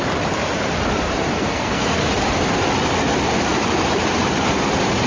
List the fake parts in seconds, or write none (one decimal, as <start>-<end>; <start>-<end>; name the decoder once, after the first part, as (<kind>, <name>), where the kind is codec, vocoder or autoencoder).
1.3-2.0 (codec, SNAC)